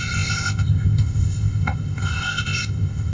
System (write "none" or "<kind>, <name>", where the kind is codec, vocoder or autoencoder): codec, ZipCodec